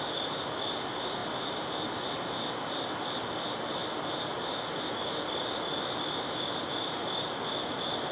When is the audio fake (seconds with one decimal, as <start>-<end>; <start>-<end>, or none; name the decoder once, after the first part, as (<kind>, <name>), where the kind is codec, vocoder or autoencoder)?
1.2-2.1 (vocoder, BigVGAN v2); 5.7-6.6